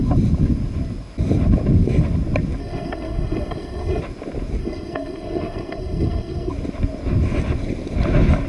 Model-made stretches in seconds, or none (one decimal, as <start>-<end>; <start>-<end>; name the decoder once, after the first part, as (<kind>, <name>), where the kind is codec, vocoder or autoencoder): 2.6-4.0 (codec, SNAC); 4.6-6.5